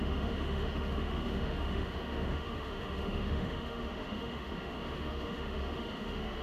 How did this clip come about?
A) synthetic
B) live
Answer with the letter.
A